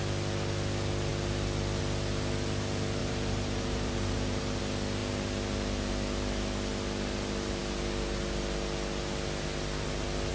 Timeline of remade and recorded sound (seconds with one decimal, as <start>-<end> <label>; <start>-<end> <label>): 0.0-3.0 recorded; 3.0-4.6 remade; 4.6-10.3 recorded